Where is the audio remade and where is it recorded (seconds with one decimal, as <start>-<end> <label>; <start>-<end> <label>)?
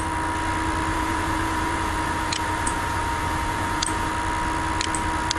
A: 0.0-0.9 recorded; 0.9-4.1 remade; 4.1-5.4 recorded